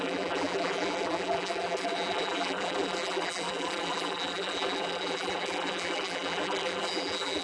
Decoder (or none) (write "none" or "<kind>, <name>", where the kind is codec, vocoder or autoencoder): vocoder, BigVGAN v2